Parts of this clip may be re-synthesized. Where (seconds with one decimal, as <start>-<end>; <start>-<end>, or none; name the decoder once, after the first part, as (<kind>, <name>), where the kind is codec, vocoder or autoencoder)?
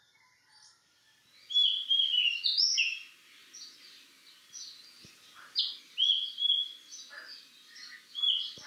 none